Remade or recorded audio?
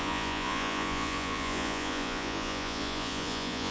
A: remade